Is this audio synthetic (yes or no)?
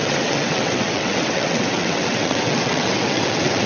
yes